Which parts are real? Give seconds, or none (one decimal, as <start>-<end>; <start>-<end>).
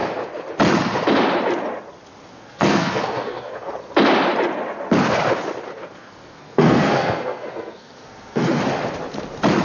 0.0-2.3; 3.7-5.7; 8.6-9.6